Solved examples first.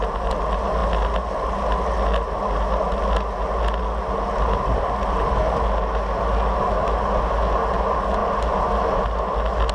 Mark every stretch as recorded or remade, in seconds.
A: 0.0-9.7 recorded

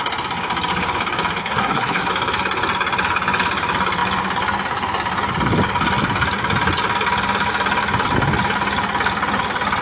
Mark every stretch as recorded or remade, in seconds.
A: 0.0-1.4 recorded; 1.4-2.1 remade; 2.1-9.8 recorded

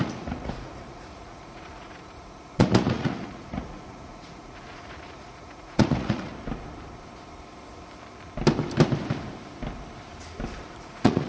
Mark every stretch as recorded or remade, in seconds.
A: 0.0-6.3 remade; 6.3-10.8 recorded; 10.8-11.3 remade

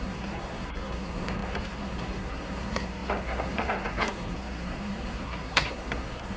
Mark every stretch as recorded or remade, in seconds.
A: 0.0-6.4 remade